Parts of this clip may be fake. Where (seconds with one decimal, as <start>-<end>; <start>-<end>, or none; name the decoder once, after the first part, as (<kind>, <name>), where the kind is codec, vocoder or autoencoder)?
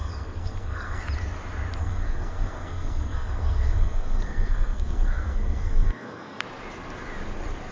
0.0-1.0 (codec, SNAC); 1.8-6.4